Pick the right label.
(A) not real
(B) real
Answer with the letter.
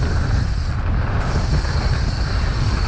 B